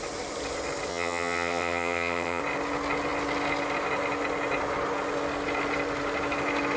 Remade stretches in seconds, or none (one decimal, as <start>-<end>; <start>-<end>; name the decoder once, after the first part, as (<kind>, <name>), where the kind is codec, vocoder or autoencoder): 0.9-2.4 (vocoder, HiFi-GAN)